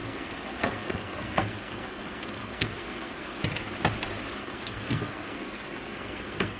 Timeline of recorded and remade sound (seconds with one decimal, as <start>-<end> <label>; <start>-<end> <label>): 0.0-3.4 remade; 3.4-4.4 recorded; 4.4-6.6 remade